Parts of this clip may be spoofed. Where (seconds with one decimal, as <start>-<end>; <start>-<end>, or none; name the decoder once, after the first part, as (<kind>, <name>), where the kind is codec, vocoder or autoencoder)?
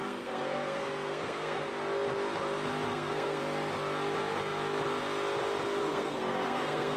0.0-1.7 (codec, SNAC); 2.9-3.4; 5.8-7.0